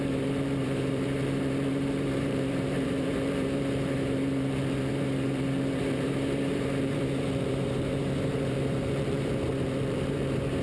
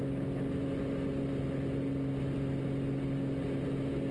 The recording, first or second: second